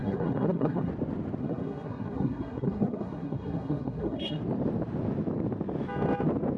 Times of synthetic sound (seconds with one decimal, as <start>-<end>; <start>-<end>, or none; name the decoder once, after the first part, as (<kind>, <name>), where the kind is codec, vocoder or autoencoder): 0.0-0.9 (codec, SNAC); 1.4-4.4